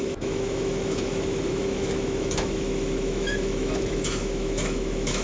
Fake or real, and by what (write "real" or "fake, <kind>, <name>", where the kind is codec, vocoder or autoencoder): fake, autoencoder, DAC-VAE